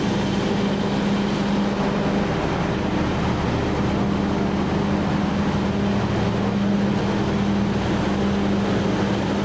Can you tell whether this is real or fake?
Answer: real